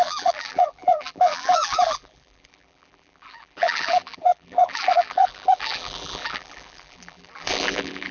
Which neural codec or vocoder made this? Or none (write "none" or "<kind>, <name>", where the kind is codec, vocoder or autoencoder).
vocoder, BigVGAN v2